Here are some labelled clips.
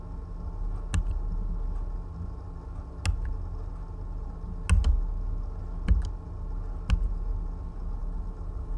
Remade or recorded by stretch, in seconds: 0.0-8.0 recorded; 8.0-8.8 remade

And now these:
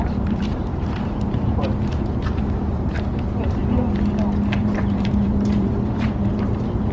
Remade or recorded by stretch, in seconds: 0.0-3.6 remade; 3.6-4.6 recorded; 4.6-6.9 remade

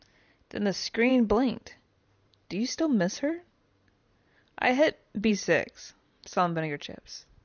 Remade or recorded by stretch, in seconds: 0.0-1.1 recorded; 1.1-3.6 remade; 3.6-4.0 recorded; 4.0-5.3 remade; 5.3-7.4 recorded

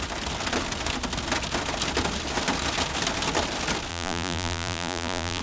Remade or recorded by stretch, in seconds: 0.0-3.9 recorded; 3.9-5.4 remade

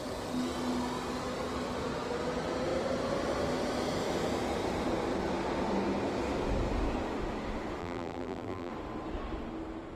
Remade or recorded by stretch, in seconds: 0.0-7.8 recorded; 7.8-8.7 remade; 8.7-10.0 recorded